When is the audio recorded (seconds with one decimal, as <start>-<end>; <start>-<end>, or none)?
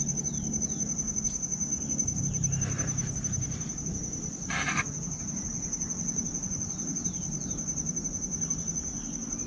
0.0-9.5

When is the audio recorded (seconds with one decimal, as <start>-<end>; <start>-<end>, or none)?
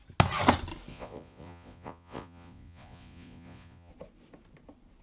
0.0-0.9; 3.9-5.0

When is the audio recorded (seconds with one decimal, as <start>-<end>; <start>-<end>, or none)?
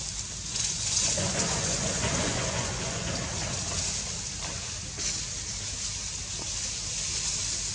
0.0-0.5; 3.1-7.7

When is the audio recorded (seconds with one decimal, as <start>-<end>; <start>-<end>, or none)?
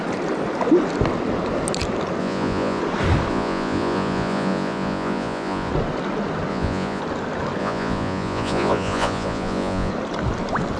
0.0-2.2; 2.8-3.3; 5.7-6.5; 7.0-7.6; 9.9-10.8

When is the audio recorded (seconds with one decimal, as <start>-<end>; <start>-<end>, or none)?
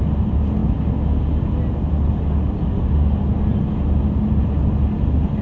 0.0-5.4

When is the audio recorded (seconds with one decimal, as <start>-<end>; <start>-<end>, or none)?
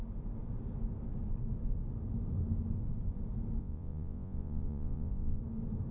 0.0-3.6; 5.4-5.9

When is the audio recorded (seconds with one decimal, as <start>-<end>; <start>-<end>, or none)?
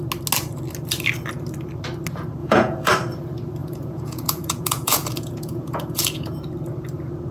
0.0-2.4; 2.9-3.6; 6.4-7.3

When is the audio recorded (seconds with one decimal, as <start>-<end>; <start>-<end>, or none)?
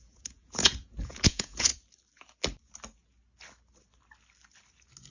1.7-5.1